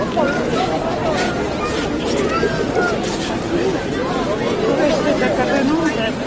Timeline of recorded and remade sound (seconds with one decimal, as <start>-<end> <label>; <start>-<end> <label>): 0.0-6.3 recorded